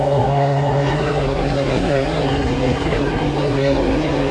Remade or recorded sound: remade